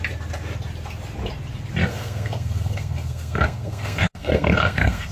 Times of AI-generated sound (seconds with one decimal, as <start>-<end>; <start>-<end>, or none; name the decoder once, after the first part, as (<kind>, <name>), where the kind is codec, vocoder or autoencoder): 1.9-5.1 (codec, SNAC)